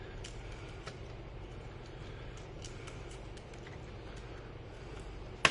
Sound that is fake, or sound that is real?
real